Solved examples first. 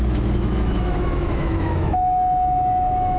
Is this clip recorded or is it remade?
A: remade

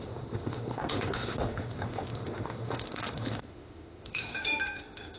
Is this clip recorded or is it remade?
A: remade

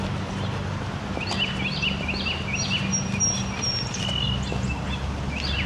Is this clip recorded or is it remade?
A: recorded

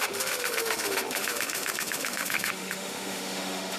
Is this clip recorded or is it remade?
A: remade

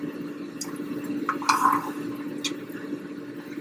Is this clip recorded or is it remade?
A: recorded